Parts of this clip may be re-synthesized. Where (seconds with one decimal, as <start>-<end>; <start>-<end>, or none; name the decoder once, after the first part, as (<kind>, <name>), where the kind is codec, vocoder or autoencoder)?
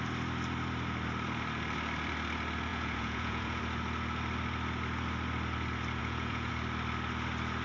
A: 2.7-3.6 (vocoder, Vocos); 6.0-6.5